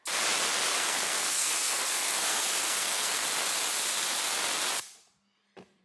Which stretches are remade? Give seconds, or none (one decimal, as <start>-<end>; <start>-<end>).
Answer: 0.7-3.2

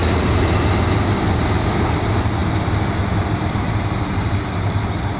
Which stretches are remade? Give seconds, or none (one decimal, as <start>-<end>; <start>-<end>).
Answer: 2.4-3.5

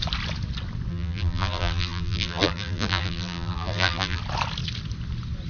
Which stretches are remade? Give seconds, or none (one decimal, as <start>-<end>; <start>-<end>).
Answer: 0.9-4.2

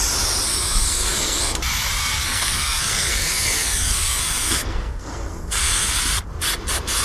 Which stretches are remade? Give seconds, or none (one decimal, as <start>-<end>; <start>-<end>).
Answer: 0.5-1.6; 2.0-6.0